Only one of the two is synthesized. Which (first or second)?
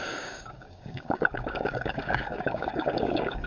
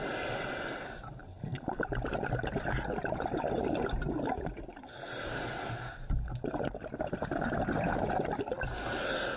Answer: first